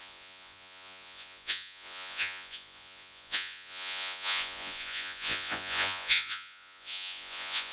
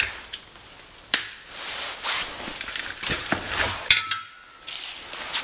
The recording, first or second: second